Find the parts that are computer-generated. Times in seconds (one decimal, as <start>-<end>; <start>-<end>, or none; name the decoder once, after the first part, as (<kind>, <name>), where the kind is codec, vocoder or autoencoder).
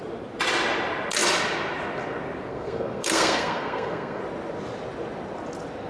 2.5-4.2 (codec, SNAC)